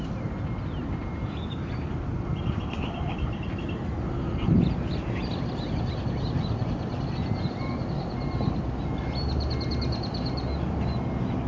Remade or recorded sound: recorded